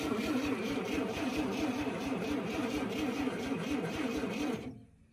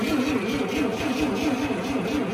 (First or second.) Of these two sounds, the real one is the second